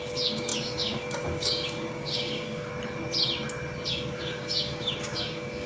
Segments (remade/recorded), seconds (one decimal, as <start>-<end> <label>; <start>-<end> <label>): 0.0-2.7 remade; 2.7-3.9 recorded; 3.9-5.7 remade